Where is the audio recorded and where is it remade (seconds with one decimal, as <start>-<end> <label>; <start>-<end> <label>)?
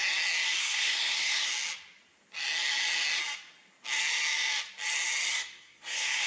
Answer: 0.0-0.6 recorded; 0.6-1.5 remade; 1.5-5.3 recorded; 5.3-6.3 remade